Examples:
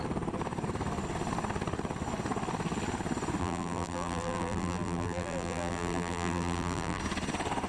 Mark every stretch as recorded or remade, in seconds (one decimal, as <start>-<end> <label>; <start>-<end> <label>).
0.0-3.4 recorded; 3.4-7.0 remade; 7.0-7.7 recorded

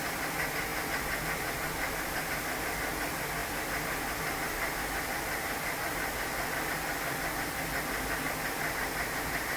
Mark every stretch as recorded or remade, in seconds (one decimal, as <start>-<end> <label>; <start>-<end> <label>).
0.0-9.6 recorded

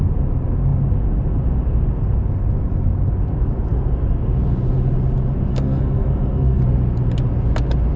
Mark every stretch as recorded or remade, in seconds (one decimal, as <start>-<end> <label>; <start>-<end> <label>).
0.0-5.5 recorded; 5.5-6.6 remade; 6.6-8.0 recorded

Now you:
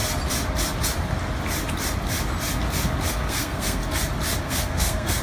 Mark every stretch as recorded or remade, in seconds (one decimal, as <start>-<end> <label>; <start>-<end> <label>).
0.0-3.1 recorded; 3.1-3.8 remade; 3.8-4.4 recorded; 4.4-5.2 remade

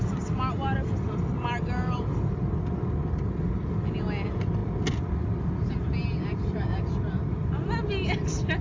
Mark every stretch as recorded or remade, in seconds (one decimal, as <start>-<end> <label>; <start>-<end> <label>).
0.0-8.6 recorded

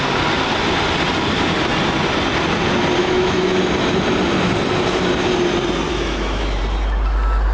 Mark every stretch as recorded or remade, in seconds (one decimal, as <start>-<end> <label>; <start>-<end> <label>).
0.0-3.0 recorded; 3.0-3.6 remade; 3.6-5.9 recorded; 5.9-6.6 remade; 6.6-7.5 recorded

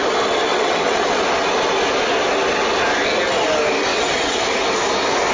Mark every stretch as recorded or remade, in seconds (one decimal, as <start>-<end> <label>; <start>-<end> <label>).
0.0-0.5 recorded; 0.5-1.2 remade; 1.2-3.9 recorded; 3.9-4.4 remade; 4.4-5.3 recorded

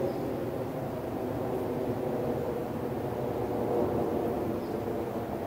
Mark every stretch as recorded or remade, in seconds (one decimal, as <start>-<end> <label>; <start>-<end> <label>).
0.0-5.5 recorded